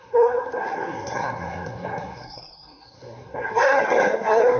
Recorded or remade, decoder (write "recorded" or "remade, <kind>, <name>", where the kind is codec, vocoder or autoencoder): remade, codec, SNAC